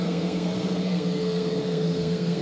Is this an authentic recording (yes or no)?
no